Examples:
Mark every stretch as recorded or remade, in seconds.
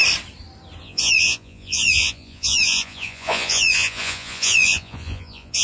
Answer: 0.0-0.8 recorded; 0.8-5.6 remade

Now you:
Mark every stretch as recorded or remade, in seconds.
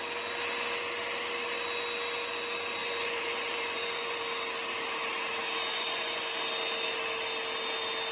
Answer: 0.0-2.8 recorded; 2.8-4.2 remade; 4.2-5.7 recorded; 5.7-6.3 remade; 6.3-8.1 recorded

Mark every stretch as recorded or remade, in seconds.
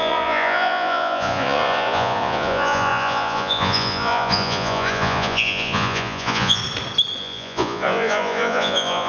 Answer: 0.0-6.6 remade; 6.6-7.2 recorded; 7.2-9.1 remade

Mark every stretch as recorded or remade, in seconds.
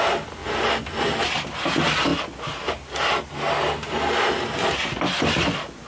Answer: 0.0-5.9 recorded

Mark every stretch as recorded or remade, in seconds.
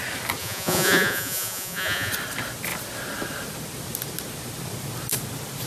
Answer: 0.0-0.4 recorded; 0.4-2.1 remade; 2.1-5.7 recorded